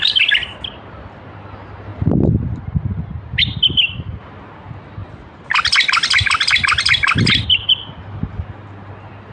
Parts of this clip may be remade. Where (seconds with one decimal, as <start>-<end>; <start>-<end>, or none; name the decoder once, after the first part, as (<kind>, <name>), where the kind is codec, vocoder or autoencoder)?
none